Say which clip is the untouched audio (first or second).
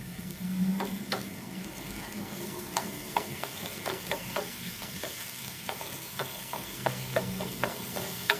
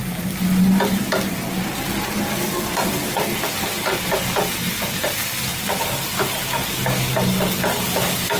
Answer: second